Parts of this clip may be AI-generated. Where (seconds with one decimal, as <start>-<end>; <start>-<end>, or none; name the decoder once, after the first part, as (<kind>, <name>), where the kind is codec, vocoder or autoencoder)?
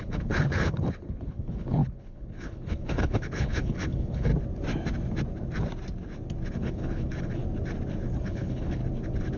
0.0-4.3 (codec, HILCodec); 6.5-7.4; 8.2-8.8